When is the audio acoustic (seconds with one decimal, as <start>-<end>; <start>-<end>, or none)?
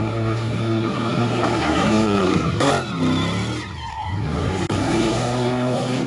2.7-3.9